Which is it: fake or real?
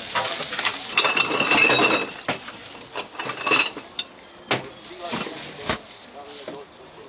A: real